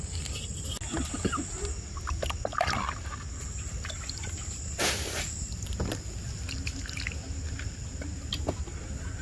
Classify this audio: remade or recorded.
recorded